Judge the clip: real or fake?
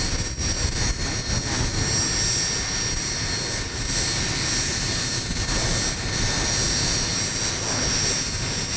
real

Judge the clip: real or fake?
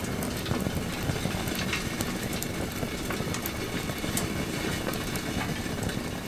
real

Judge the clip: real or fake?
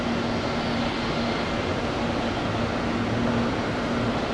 real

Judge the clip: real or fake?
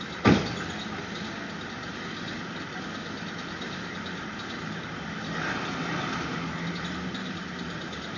real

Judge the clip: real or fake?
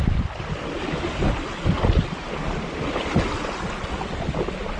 real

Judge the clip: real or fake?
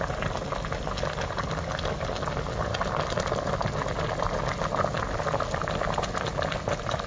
real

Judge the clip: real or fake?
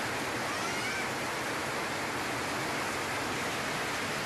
real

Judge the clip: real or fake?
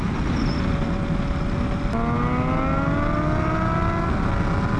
real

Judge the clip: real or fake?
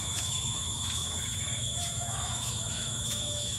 fake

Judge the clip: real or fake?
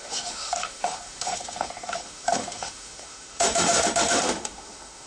fake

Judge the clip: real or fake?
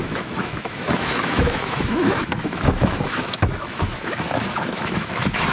fake